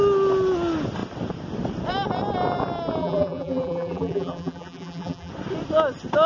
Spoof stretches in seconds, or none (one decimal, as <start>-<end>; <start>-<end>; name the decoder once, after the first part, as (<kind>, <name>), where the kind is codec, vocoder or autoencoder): 3.0-5.3 (vocoder, BigVGAN v2)